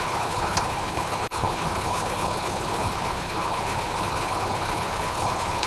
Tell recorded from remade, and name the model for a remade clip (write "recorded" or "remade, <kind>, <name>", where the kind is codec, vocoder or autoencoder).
remade, codec, HILCodec